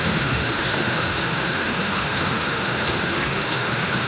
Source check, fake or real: fake